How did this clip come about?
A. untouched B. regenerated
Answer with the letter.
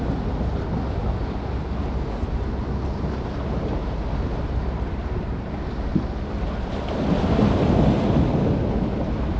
A